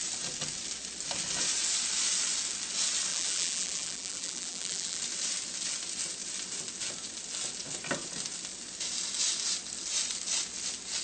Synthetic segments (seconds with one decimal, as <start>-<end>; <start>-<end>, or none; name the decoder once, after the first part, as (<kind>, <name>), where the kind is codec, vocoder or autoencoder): 3.1-5.0 (vocoder, BigVGAN v2)